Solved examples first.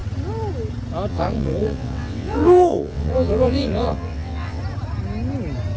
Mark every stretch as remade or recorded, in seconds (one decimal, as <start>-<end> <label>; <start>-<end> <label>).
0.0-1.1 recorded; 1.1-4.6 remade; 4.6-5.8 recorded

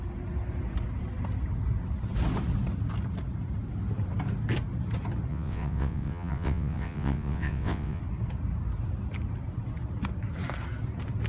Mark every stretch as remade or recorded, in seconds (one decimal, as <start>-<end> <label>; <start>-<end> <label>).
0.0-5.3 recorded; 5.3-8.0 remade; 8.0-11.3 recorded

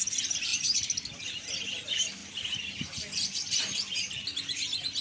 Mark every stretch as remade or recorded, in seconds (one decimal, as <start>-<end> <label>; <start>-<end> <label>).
0.0-5.0 recorded